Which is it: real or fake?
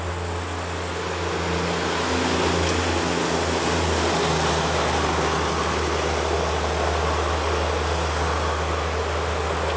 real